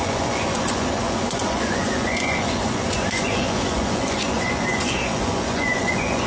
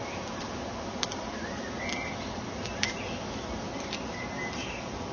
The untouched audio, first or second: second